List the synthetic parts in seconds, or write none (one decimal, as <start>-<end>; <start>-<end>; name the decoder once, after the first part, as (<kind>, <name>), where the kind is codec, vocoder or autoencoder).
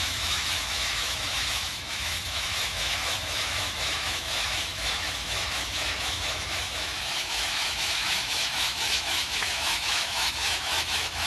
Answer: 0.0-11.3 (autoencoder, DAC-VAE)